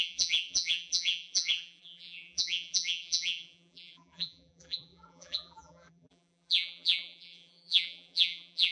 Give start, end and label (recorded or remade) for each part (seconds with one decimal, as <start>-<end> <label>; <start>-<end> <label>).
0.0-8.7 remade